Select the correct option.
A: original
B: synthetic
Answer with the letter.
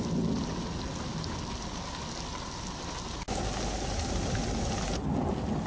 A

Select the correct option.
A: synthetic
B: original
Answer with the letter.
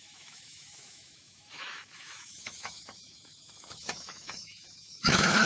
A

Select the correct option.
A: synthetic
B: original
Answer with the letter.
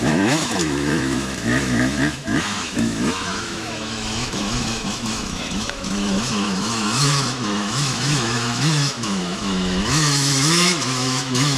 A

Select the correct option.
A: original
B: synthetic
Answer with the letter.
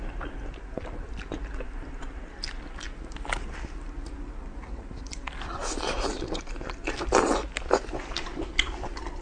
A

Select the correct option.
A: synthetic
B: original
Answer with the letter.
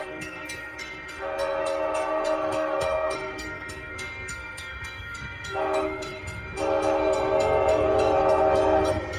A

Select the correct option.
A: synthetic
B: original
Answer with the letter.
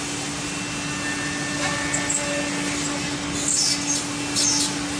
B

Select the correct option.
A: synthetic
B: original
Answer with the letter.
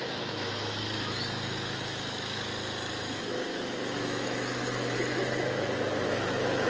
A